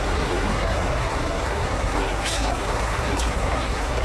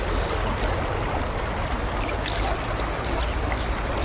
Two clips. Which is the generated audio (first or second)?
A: first